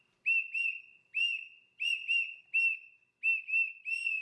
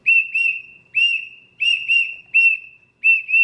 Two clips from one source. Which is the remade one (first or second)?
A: second